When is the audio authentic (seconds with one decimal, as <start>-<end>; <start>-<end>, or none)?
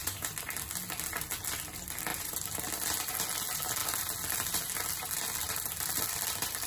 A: 0.5-2.1; 2.6-6.7